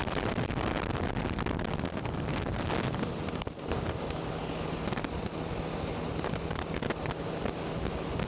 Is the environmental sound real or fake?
real